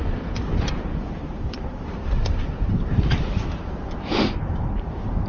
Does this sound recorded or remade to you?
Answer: remade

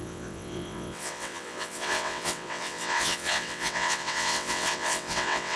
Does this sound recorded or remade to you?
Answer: remade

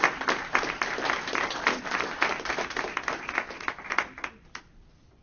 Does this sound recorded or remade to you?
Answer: recorded